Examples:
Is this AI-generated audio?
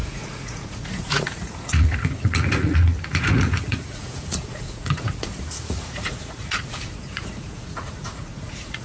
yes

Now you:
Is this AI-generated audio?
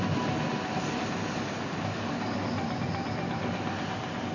no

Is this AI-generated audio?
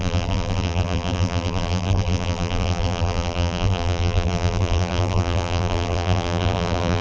yes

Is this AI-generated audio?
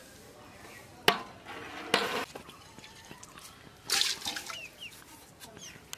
no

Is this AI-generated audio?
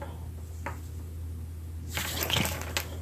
no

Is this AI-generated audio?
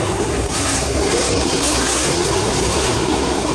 yes